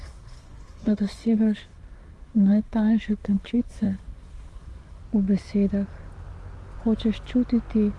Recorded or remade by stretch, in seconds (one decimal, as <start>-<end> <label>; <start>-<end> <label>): 0.0-5.0 remade; 5.0-8.0 recorded